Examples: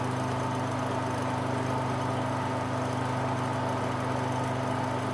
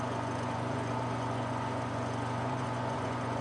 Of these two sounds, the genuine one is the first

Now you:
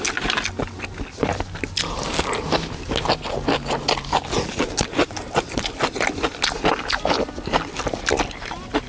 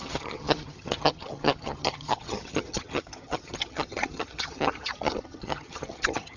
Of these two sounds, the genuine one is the first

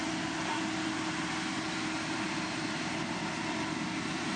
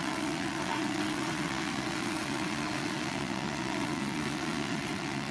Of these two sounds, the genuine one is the first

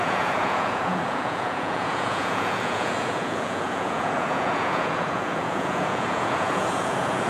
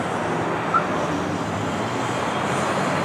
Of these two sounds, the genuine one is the second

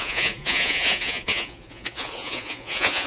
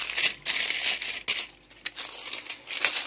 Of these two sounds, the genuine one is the second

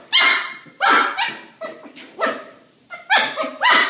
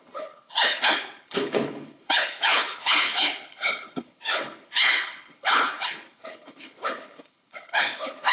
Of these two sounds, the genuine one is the first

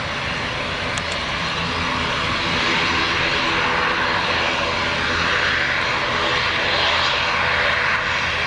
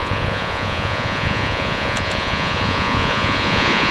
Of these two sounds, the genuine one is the first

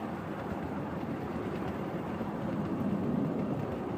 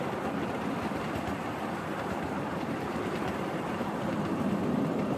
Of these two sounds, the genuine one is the first